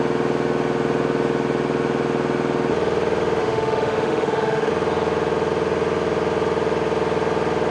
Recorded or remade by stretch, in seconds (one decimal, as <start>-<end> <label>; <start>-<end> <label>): 0.0-3.4 recorded; 3.4-4.7 remade; 4.7-7.7 recorded